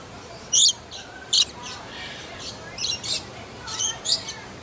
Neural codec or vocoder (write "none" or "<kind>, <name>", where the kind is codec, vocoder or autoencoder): vocoder, BigVGAN v2